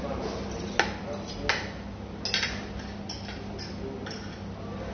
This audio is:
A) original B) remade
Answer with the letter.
A